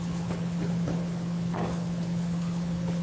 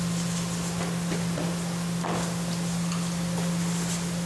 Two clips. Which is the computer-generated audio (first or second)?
first